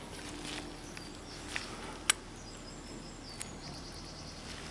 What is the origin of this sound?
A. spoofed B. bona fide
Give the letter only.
B